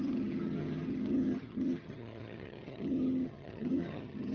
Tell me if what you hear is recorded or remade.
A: remade